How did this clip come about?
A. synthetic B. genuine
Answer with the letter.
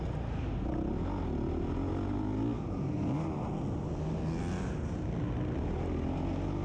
B